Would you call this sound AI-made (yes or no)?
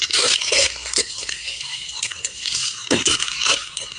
yes